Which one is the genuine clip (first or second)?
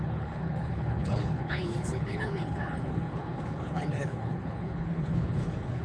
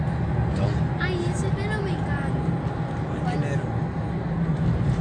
second